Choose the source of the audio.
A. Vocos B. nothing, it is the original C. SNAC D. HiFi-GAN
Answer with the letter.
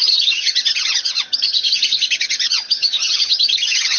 D